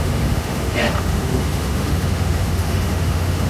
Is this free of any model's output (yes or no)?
no